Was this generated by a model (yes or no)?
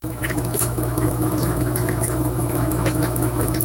yes